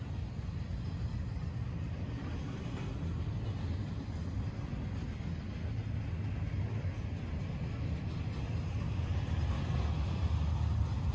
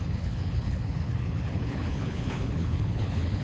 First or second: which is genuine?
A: first